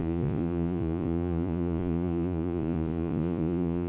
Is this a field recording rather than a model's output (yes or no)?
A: no